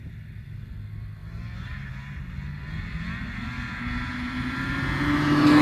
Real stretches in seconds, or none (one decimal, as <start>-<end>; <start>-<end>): 0.0-5.6